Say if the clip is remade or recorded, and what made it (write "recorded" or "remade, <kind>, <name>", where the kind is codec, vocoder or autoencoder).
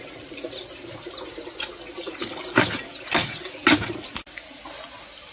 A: recorded